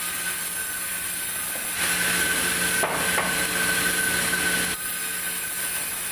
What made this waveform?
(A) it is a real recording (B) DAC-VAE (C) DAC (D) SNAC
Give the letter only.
A